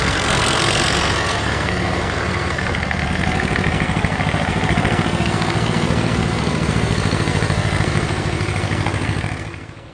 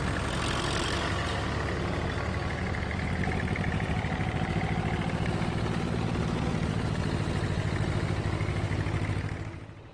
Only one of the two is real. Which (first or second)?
second